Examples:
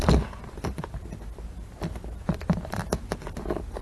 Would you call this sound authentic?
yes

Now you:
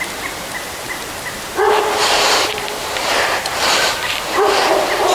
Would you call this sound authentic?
no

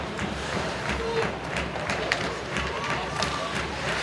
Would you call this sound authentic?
no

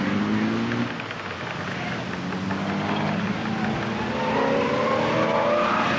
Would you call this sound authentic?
yes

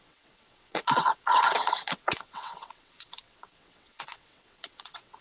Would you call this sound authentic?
no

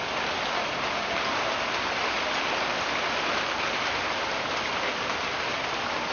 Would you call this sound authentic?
yes